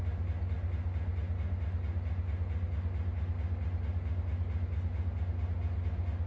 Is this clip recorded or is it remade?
recorded